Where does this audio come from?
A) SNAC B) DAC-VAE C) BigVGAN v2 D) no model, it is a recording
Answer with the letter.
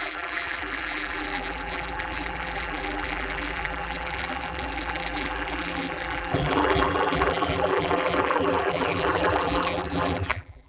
C